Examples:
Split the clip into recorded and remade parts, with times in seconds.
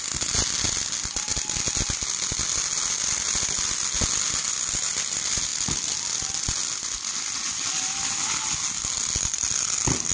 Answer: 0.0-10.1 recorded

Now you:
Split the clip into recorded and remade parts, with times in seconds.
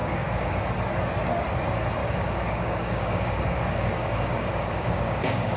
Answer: 0.0-0.7 remade; 0.7-2.0 recorded; 2.0-5.6 remade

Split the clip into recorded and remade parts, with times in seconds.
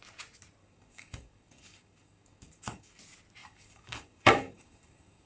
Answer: 0.0-0.6 recorded; 0.6-3.0 remade; 3.0-3.4 recorded; 3.4-5.3 remade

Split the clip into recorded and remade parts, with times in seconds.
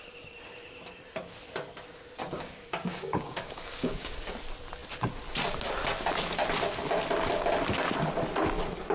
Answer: 0.0-2.2 recorded; 2.2-4.2 remade; 4.2-8.9 recorded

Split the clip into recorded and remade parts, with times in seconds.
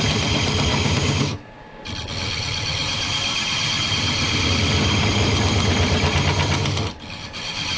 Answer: 0.0-0.7 recorded; 0.7-1.8 remade; 1.8-7.8 recorded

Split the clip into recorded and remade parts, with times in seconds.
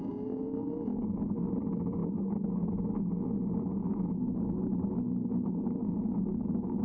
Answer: 0.0-0.9 recorded; 0.9-1.5 remade; 1.5-2.0 recorded; 2.0-2.7 remade; 2.7-5.8 recorded; 5.8-6.8 remade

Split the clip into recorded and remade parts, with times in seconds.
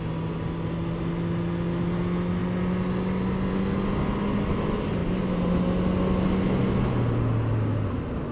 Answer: 0.0-8.3 recorded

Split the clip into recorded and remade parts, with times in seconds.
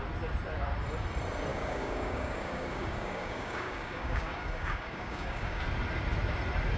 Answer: 0.0-1.5 recorded; 1.5-5.6 remade; 5.6-6.8 recorded